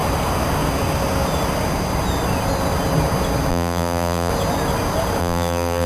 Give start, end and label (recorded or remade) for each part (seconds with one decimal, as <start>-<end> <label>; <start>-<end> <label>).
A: 0.0-3.5 recorded; 3.5-4.3 remade; 4.3-5.2 recorded; 5.2-5.9 remade